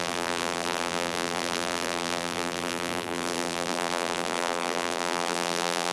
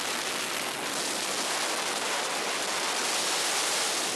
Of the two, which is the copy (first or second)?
first